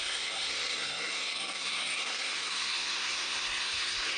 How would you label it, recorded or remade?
remade